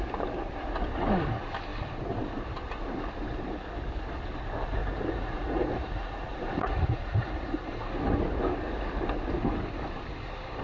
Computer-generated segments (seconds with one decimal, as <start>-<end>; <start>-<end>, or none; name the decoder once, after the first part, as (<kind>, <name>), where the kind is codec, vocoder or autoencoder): 4.8-7.9 (vocoder, Vocos)